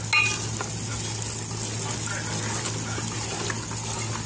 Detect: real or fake real